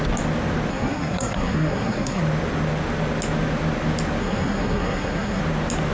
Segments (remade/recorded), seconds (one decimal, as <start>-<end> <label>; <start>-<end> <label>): 0.0-0.7 recorded; 0.7-2.2 remade; 2.2-4.2 recorded; 4.2-5.4 remade; 5.4-5.9 recorded

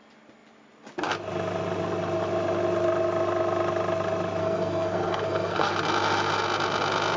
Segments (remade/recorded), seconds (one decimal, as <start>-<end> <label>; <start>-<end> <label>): 0.0-4.4 recorded; 4.4-5.7 remade; 5.7-7.2 recorded

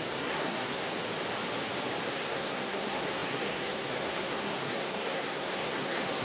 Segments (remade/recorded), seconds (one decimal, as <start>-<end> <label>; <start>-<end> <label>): 0.0-0.8 remade; 0.8-2.1 recorded; 2.1-6.2 remade

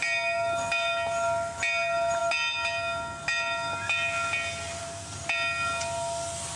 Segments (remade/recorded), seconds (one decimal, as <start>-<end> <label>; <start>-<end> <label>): 0.0-6.6 recorded

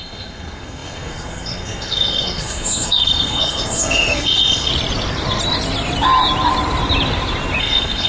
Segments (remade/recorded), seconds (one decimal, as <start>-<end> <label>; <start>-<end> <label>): 0.0-4.7 remade; 4.7-7.6 recorded; 7.6-8.1 remade

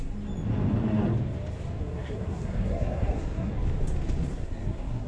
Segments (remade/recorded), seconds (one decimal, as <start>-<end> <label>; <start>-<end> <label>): 0.0-1.8 recorded; 1.8-3.5 remade; 3.5-4.3 recorded; 4.3-5.1 remade